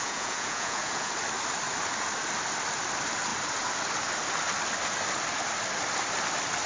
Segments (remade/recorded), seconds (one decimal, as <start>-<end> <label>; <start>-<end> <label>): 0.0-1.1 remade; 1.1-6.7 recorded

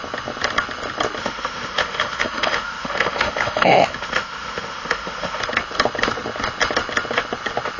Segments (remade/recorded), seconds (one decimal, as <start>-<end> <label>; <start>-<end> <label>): 0.0-1.2 recorded; 1.2-5.4 remade; 5.4-7.8 recorded

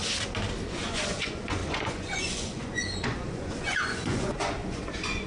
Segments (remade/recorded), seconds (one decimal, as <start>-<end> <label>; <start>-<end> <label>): 0.0-0.7 recorded; 0.7-5.3 remade

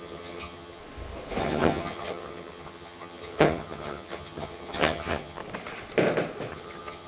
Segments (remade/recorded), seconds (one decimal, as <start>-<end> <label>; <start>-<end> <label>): 0.0-0.8 remade; 0.8-1.4 recorded; 1.4-5.4 remade; 5.4-6.5 recorded; 6.5-7.1 remade

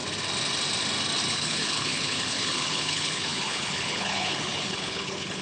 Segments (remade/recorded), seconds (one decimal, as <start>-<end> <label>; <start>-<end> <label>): 0.0-1.3 recorded; 1.3-5.4 remade

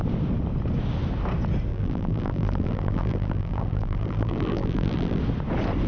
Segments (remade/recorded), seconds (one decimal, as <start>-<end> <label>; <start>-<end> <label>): 0.0-1.7 recorded; 1.7-5.2 remade; 5.2-5.9 recorded

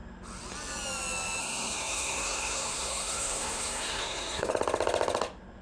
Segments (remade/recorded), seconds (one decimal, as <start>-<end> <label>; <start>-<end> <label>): 0.0-1.4 recorded; 1.4-4.5 remade; 4.5-5.6 recorded